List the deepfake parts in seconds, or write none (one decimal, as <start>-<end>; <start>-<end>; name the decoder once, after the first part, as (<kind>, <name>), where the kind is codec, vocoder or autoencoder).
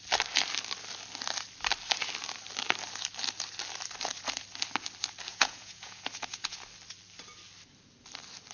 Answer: 5.3-6.6 (vocoder, Vocos)